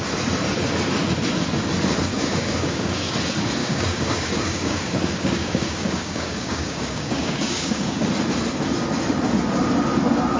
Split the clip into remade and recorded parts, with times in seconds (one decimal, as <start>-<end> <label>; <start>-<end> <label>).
0.0-2.1 recorded; 2.1-3.1 remade; 3.1-3.6 recorded; 3.6-8.1 remade; 8.1-10.4 recorded